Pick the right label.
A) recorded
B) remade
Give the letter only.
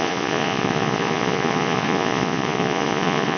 B